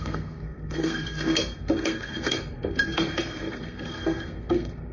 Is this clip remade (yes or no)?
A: yes